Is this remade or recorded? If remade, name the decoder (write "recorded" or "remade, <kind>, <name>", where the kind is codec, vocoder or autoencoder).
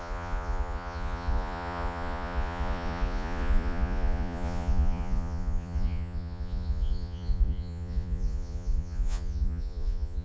remade, vocoder, Vocos